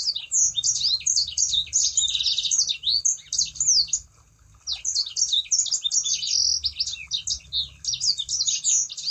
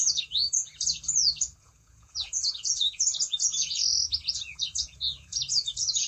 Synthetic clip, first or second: second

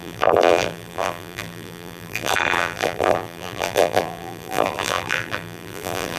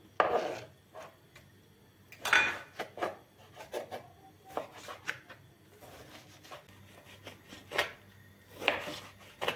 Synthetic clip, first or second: first